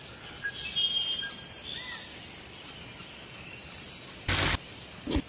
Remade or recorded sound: recorded